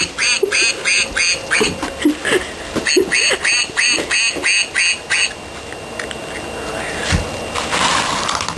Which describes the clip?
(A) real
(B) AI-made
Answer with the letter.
A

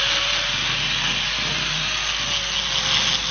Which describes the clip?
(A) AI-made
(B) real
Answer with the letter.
B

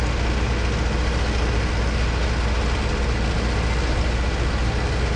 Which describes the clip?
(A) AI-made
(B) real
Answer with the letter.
B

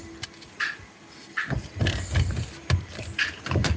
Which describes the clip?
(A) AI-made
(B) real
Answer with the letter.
B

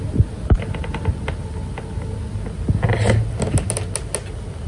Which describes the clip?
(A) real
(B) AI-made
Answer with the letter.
A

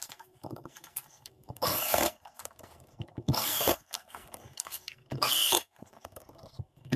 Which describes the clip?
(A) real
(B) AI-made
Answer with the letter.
B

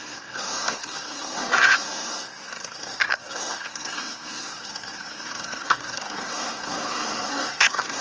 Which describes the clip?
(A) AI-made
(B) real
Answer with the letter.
A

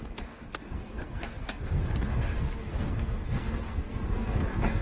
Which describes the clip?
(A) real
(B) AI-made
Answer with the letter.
B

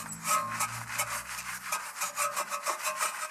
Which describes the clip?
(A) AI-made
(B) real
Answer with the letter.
B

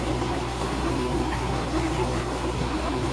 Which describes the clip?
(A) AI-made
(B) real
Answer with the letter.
A